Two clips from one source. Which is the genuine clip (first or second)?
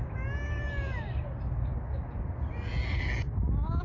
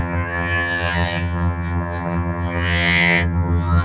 first